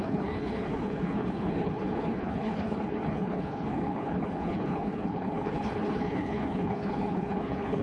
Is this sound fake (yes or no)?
yes